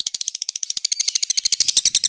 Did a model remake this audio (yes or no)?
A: no